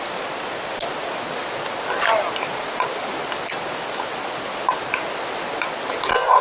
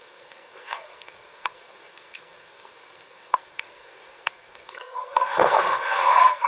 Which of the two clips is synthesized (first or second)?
second